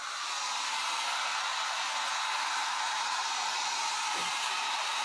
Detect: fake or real real